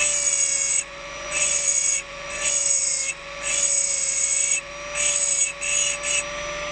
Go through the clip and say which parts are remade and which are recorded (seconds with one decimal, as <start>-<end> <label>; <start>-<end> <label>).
0.0-0.7 recorded; 0.7-4.7 remade; 4.7-6.7 recorded